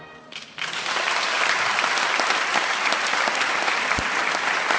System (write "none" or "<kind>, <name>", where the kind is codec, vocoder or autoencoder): none